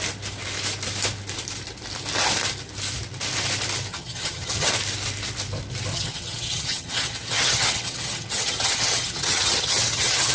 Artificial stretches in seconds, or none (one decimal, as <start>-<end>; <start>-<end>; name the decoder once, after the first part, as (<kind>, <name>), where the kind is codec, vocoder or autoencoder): 3.9-4.7 (vocoder, HiFi-GAN); 5.9-10.3